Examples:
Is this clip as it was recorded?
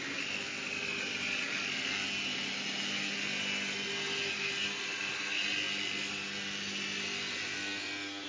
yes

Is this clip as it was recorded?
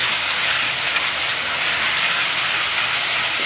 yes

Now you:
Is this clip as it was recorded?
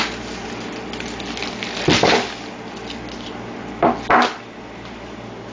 yes